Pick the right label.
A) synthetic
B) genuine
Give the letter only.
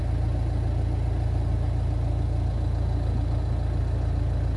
B